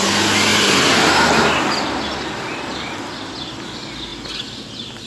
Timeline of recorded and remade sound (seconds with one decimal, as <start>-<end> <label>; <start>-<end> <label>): 0.0-5.1 recorded